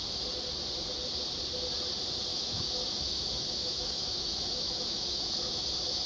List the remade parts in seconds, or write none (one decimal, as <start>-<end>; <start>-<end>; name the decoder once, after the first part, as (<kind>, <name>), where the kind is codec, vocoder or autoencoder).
2.3-6.1 (autoencoder, DAC-VAE)